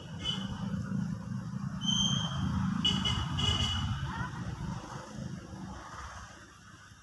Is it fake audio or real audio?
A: real